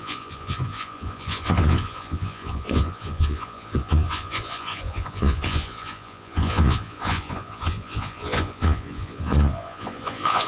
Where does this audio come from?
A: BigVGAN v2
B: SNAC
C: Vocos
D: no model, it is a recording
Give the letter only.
C